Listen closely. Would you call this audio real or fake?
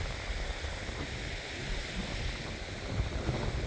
real